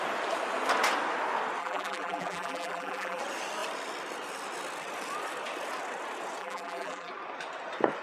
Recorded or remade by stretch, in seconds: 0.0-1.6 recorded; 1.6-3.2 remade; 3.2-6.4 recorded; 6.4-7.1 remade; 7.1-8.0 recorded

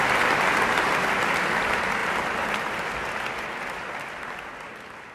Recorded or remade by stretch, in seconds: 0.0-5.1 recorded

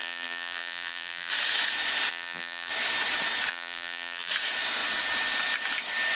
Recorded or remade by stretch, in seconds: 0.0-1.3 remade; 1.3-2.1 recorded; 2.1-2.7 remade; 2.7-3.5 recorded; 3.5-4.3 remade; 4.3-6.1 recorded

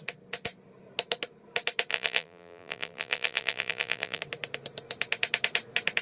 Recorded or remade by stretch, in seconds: 0.0-1.9 recorded; 1.9-4.2 remade; 4.2-6.0 recorded

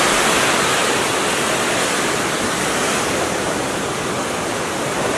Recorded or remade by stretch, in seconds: 0.0-2.8 recorded; 2.8-3.8 remade; 3.8-5.2 recorded

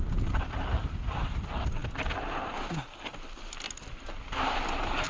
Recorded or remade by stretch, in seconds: 0.0-0.7 recorded; 0.7-1.4 remade; 1.4-5.1 recorded

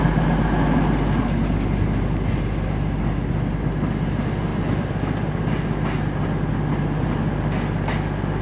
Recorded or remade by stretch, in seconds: 0.0-8.4 recorded

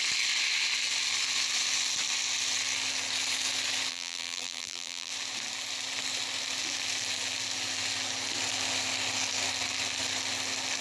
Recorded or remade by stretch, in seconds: 0.0-3.9 recorded; 3.9-5.1 remade; 5.1-10.8 recorded